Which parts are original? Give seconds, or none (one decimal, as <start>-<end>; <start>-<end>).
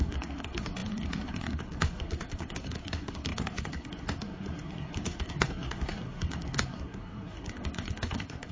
none